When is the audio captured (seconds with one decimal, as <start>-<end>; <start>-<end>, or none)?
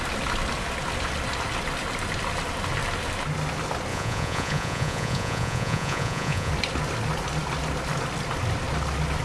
0.0-3.9; 6.5-9.2